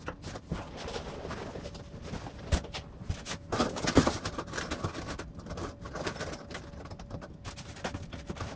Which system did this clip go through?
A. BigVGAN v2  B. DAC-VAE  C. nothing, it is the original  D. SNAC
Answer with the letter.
C